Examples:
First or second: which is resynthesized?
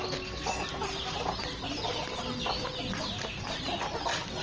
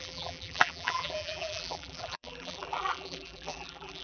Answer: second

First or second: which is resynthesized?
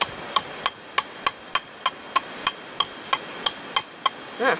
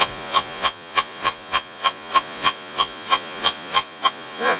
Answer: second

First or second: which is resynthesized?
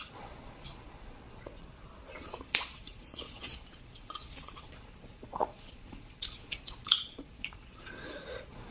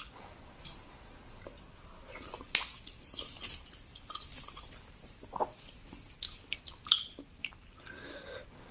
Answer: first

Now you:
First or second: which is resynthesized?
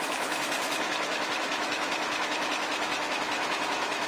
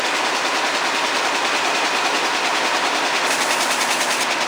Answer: first